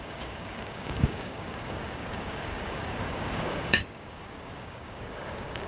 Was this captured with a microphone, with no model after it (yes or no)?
no